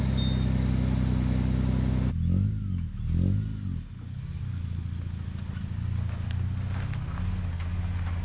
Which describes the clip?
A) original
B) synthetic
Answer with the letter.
A